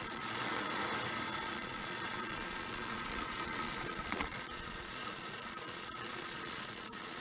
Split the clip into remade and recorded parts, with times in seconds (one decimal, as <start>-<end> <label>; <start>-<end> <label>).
0.0-0.8 remade; 0.8-1.4 recorded; 1.4-7.2 remade